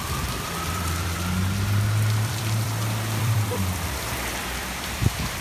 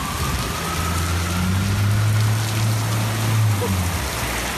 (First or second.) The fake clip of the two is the first